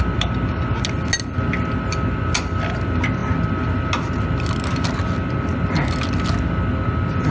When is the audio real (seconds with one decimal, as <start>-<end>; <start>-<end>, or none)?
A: 0.0-7.3